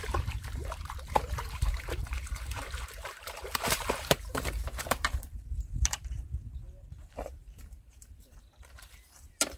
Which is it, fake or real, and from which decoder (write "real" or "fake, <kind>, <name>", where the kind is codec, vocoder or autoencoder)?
fake, vocoder, BigVGAN v2